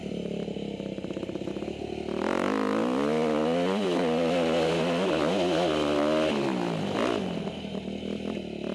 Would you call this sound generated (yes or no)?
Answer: no